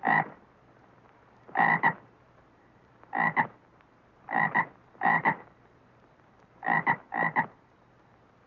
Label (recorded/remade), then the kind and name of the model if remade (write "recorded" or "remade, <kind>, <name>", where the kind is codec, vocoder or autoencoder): remade, vocoder, BigVGAN v2